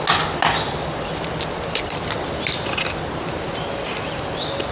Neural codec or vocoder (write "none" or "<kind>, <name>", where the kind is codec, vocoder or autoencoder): none